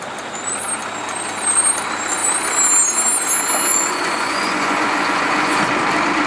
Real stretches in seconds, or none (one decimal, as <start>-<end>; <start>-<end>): 0.0-3.7; 5.6-6.3